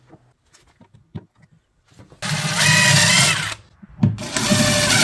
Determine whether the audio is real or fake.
real